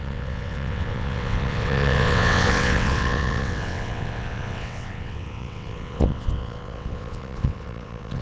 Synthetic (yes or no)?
yes